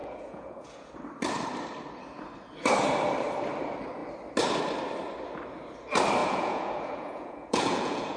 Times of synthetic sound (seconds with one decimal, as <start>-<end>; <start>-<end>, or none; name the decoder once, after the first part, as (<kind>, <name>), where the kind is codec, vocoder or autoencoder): 0.0-0.9 (vocoder, Vocos); 6.2-8.2